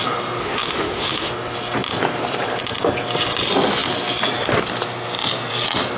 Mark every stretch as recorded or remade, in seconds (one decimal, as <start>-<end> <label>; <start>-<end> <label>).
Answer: 0.0-0.4 recorded; 0.4-1.3 remade; 1.3-6.0 recorded